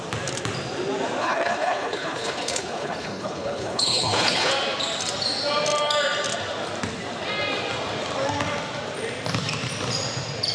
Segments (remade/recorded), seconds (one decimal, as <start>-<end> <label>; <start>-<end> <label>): 0.0-1.2 recorded; 1.2-4.5 remade; 4.5-10.5 recorded